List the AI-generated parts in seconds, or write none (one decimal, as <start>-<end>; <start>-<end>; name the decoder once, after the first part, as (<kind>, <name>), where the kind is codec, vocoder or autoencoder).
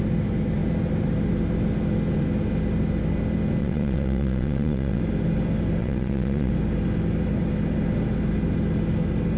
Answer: 3.6-5.0 (vocoder, WaveNeXt); 5.8-6.5